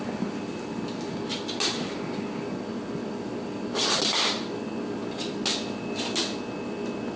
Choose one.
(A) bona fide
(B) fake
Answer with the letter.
A